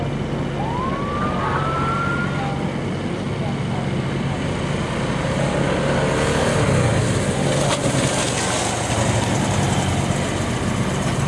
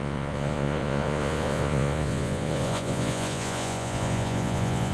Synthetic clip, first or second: second